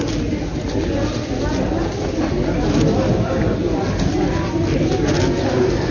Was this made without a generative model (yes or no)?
yes